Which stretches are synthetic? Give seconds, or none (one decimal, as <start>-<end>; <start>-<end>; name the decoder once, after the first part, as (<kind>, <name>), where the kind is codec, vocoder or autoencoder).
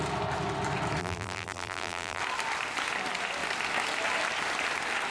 1.0-2.2 (vocoder, BigVGAN v2)